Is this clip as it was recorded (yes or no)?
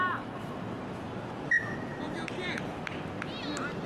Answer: yes